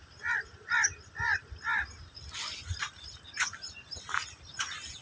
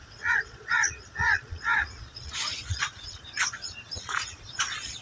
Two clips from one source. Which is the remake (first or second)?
second